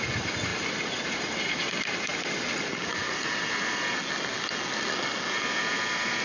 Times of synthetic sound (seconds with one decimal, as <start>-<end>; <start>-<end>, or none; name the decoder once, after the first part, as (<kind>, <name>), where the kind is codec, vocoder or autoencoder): none

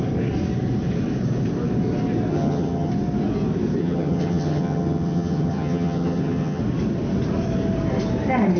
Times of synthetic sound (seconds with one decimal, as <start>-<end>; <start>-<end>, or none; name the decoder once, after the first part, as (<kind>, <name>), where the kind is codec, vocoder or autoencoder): 2.3-2.9 (vocoder, HiFi-GAN); 3.8-6.6

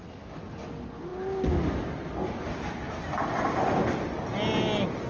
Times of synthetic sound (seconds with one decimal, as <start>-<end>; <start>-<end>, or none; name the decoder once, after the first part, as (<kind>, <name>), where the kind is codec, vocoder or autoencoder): none

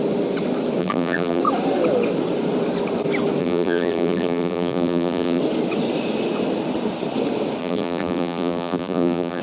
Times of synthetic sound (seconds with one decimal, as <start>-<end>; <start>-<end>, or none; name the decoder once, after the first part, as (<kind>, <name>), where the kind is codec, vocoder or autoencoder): 0.8-1.4 (vocoder, BigVGAN v2); 3.4-5.4; 7.6-9.4